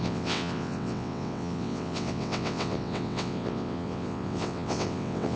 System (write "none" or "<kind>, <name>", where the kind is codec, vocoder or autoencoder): vocoder, WaveNeXt